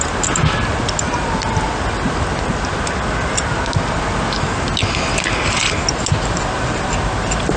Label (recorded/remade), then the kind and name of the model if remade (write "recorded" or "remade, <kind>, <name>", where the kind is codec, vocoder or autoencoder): recorded